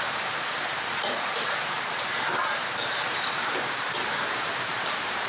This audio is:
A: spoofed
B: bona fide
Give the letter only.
A